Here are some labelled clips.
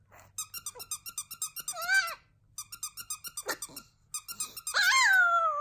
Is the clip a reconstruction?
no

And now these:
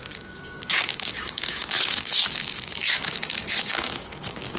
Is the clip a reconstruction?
yes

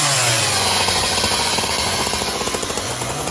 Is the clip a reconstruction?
yes